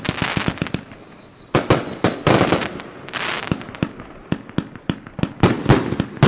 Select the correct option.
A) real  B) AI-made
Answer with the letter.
A